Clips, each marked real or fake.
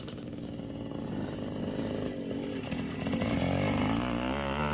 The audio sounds real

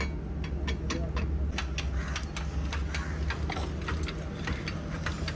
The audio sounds real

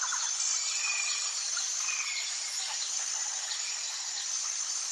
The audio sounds real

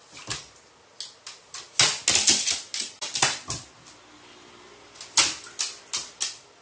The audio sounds real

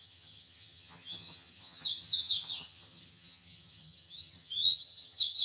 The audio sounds fake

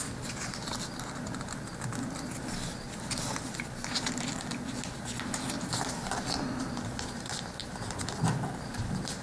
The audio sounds real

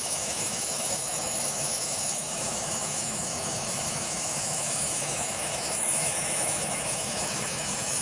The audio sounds fake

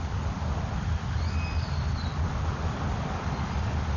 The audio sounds real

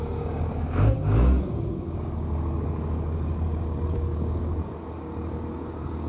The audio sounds fake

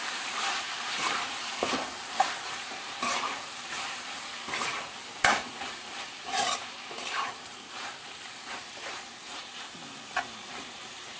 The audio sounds fake